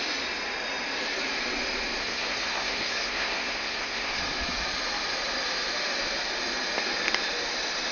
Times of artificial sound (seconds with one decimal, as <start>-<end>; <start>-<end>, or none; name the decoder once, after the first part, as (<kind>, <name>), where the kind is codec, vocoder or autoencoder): 2.0-4.2 (codec, SNAC)